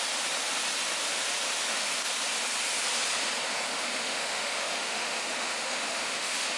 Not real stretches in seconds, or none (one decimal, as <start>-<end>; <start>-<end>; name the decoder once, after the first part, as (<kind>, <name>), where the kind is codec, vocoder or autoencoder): 3.7-6.6 (autoencoder, DAC-VAE)